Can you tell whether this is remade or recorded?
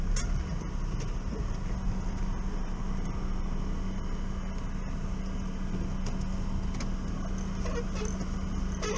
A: recorded